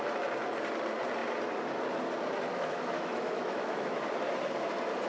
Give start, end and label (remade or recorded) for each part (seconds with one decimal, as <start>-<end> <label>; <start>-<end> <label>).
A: 0.0-2.5 recorded; 2.5-4.0 remade; 4.0-5.1 recorded